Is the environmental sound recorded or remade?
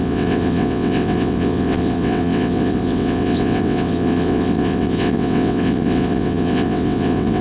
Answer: remade